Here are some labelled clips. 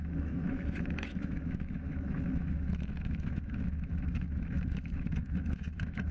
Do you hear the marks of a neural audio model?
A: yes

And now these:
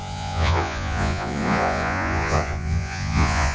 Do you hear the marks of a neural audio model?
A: yes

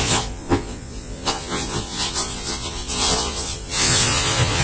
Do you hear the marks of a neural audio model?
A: yes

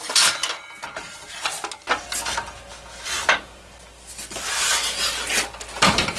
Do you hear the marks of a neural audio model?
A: no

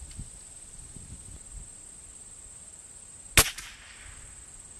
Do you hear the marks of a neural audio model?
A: no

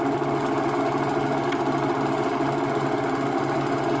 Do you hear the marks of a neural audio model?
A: no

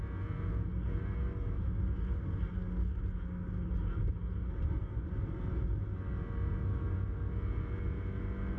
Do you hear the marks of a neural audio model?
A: no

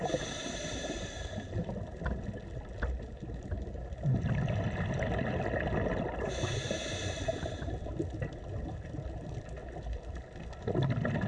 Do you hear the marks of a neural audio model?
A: no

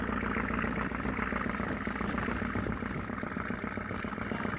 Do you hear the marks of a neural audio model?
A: no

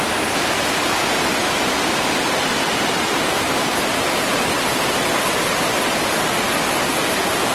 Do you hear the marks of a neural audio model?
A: no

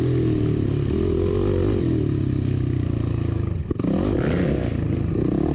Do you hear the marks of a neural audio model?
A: no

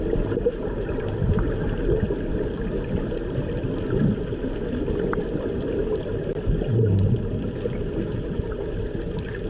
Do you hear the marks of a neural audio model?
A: no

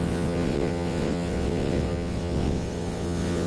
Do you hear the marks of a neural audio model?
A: yes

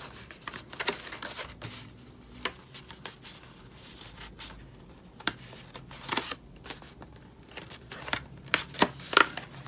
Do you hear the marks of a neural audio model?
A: no